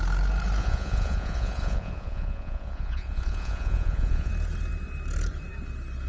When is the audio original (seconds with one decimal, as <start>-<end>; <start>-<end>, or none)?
0.0-0.6; 4.3-6.1